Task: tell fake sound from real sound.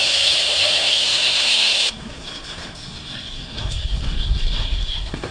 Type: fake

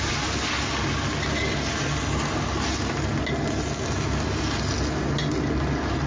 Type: real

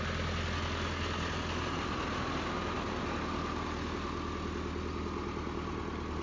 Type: real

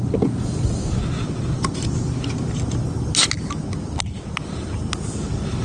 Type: real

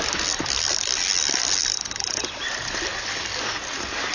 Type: real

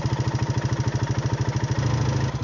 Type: real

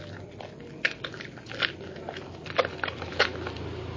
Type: real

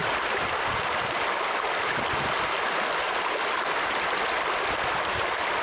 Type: real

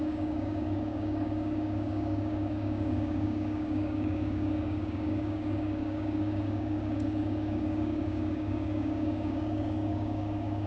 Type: fake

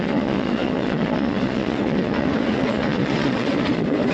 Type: fake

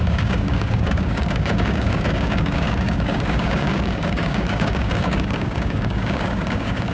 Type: fake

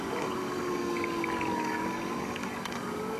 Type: fake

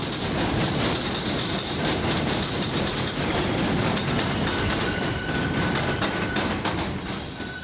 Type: fake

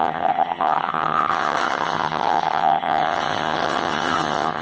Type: fake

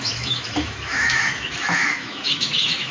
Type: fake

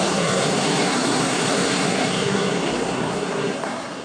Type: fake